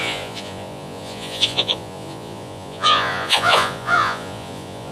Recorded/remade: remade